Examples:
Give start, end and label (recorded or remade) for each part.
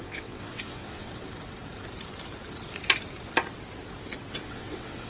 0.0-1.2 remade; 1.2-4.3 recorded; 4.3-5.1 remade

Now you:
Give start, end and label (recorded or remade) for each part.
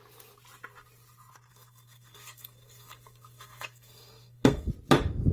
0.0-1.5 recorded; 1.5-4.7 remade; 4.7-5.3 recorded